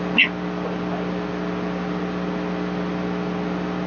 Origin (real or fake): real